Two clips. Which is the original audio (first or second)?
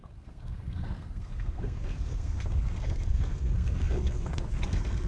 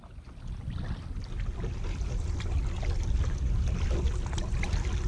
second